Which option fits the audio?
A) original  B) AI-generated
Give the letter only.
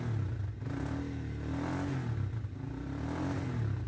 A